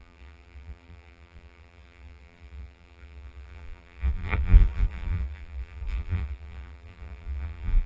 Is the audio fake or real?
fake